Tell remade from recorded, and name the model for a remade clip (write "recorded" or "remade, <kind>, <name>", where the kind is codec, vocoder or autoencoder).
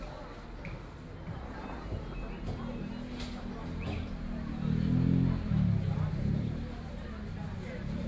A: recorded